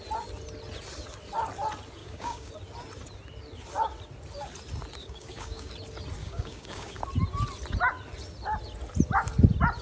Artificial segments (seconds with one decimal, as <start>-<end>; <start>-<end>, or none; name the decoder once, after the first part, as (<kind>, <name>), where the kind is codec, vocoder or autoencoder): 2.0-2.5 (codec, DAC); 5.0-5.7; 6.2-7.0